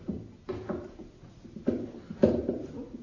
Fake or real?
real